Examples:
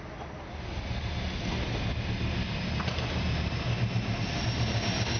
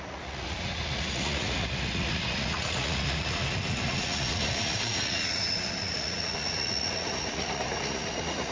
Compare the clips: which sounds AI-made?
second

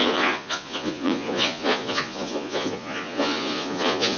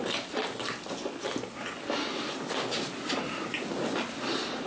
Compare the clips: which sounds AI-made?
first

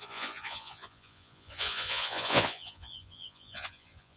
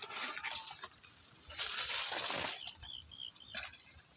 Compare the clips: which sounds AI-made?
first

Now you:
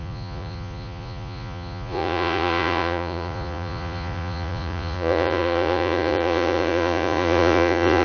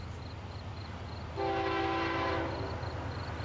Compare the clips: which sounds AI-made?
first